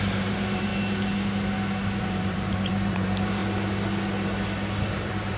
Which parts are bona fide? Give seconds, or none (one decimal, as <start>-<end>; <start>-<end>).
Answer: 0.7-2.0; 3.4-4.8